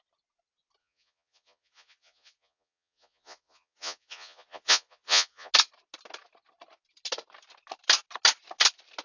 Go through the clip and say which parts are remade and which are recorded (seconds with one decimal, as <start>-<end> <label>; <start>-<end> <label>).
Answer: 0.0-0.8 recorded; 0.8-5.5 remade; 5.5-9.0 recorded